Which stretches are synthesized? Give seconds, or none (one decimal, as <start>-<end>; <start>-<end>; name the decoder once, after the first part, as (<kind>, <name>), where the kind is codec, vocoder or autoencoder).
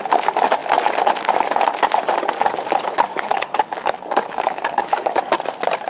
3.1-5.3 (codec, DAC)